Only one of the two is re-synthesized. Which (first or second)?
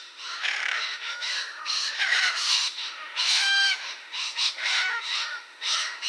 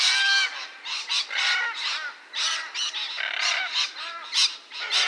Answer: first